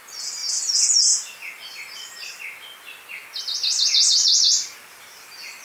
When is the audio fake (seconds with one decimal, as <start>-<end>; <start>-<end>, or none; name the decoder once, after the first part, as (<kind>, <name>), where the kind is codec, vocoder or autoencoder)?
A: none